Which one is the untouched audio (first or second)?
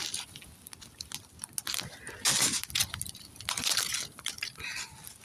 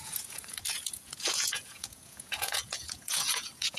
first